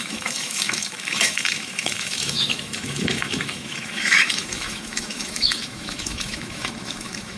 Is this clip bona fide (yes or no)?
no